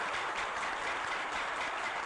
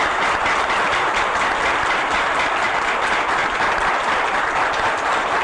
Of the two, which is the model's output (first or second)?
first